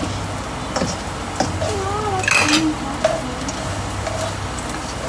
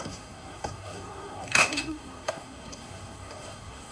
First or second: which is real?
first